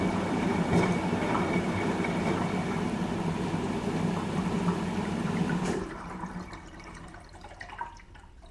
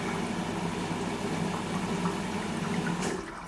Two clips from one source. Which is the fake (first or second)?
first